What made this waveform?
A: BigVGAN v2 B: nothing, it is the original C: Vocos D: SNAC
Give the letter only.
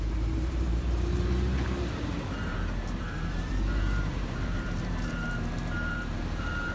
A